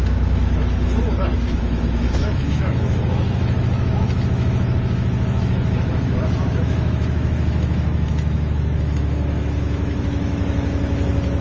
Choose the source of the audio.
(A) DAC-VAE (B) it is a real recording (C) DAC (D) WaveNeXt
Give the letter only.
A